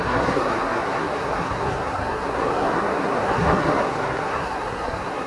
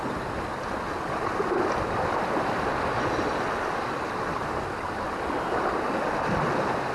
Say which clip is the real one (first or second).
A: second